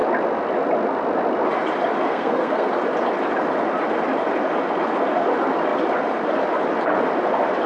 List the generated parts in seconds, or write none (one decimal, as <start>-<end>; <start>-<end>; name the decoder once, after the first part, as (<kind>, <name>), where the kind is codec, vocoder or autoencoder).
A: 2.1-2.7 (codec, SNAC)